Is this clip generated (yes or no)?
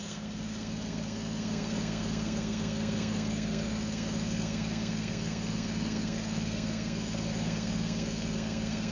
yes